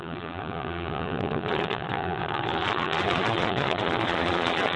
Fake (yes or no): yes